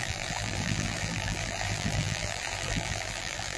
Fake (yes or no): yes